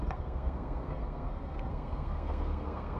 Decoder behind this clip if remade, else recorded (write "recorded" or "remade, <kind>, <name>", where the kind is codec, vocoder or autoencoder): remade, codec, SNAC